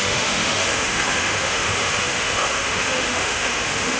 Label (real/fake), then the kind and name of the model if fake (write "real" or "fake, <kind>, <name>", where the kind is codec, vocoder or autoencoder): fake, autoencoder, DAC-VAE